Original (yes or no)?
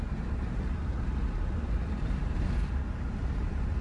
no